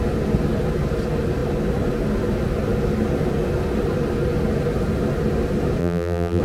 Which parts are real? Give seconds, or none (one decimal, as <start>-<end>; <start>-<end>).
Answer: 0.0-5.8